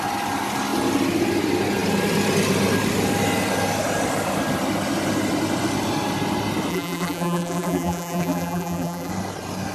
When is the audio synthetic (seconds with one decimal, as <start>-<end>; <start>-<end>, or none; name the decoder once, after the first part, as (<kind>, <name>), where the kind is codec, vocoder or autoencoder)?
6.7-9.1 (vocoder, BigVGAN v2)